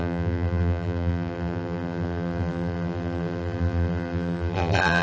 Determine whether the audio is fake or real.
fake